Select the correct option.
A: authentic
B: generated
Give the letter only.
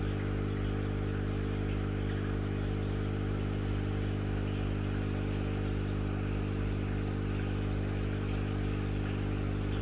A